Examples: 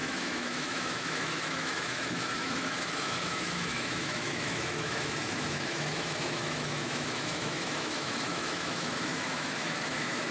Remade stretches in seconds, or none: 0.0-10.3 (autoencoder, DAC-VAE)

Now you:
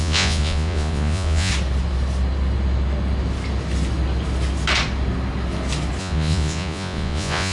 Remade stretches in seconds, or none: 0.0-1.5 (vocoder, Vocos); 6.0-7.5

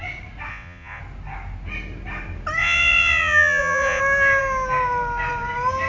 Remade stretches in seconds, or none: 0.5-1.0 (vocoder, Vocos); 2.6-4.0

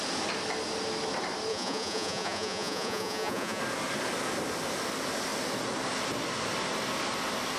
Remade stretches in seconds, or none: 1.5-3.6 (vocoder, Vocos)